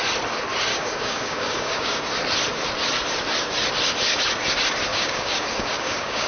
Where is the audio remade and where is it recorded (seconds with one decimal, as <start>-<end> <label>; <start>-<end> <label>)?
0.0-0.7 recorded; 0.7-2.0 remade; 2.0-4.9 recorded; 4.9-6.3 remade